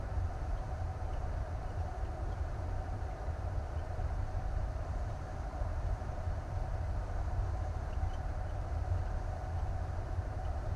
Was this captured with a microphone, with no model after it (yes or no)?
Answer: no